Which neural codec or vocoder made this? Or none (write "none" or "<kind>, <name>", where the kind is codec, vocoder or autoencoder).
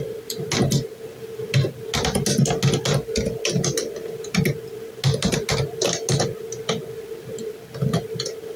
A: none